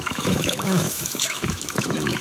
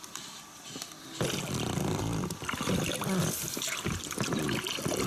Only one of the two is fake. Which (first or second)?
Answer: first